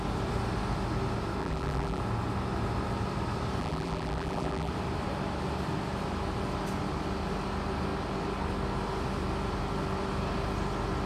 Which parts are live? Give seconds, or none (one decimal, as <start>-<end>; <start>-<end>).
0.0-1.4; 2.0-3.6; 4.7-11.1